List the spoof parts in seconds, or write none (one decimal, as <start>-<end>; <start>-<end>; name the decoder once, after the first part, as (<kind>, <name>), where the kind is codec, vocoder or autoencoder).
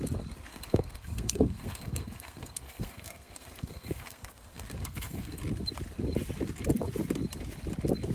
0.5-5.4 (codec, SNAC)